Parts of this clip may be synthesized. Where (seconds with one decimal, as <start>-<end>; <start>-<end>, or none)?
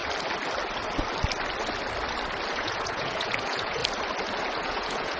2.5-3.8; 4.6-5.2